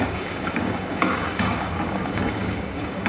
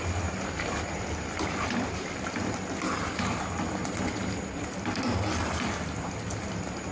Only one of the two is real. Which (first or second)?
second